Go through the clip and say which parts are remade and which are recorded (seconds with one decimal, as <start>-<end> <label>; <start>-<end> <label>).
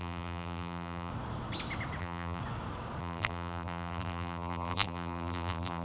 0.0-1.1 remade; 1.1-2.0 recorded; 2.0-2.4 remade; 2.4-3.0 recorded; 3.0-5.8 remade